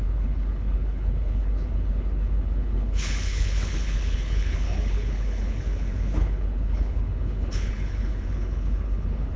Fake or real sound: fake